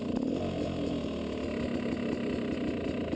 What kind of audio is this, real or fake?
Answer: real